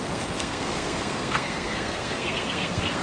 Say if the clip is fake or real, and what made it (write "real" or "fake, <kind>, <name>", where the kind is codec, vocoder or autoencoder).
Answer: fake, codec, SNAC